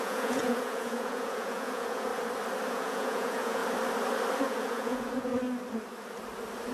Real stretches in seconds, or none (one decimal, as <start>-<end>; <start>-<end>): 2.1-2.7; 3.6-4.4; 5.3-6.7